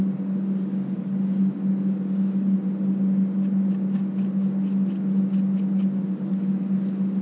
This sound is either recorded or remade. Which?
recorded